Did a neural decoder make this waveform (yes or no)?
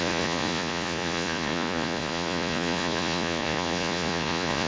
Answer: yes